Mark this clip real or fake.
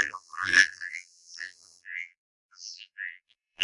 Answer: fake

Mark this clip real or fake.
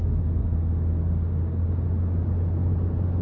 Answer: real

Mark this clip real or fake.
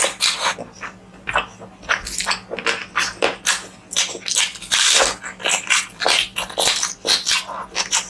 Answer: real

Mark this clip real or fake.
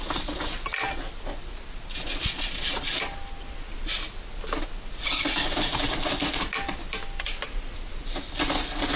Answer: real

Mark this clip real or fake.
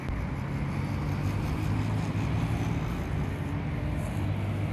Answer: real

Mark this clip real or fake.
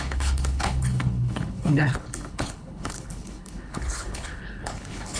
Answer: fake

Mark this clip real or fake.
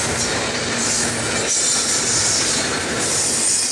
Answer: real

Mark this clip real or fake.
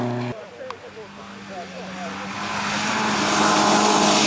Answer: real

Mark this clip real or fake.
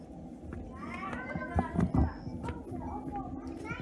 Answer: real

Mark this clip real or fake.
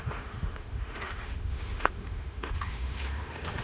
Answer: fake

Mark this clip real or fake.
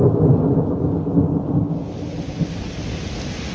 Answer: real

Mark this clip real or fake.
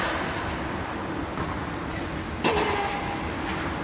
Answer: real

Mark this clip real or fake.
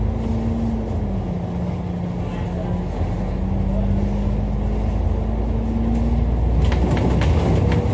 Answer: real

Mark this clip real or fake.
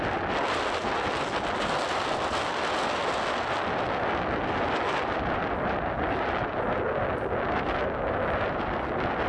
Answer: real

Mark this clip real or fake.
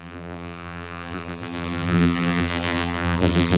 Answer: fake